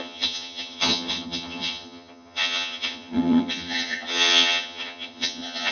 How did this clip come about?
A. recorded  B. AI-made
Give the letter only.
B